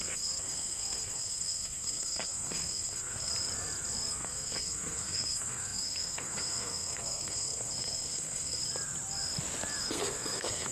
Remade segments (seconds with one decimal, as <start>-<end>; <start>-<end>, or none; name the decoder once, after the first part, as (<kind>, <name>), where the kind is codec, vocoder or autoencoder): 0.0-3.3 (codec, SNAC); 4.1-8.6; 9.8-10.7